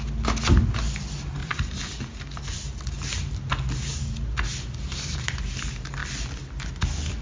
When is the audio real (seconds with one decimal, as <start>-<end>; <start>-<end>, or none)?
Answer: 0.0-1.4; 3.7-6.0